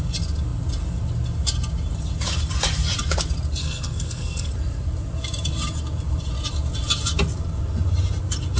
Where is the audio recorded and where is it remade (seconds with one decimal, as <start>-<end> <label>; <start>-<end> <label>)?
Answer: 0.0-3.6 recorded; 3.6-4.5 remade; 4.5-8.6 recorded